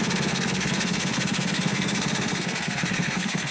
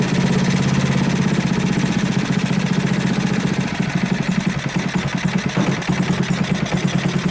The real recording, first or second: second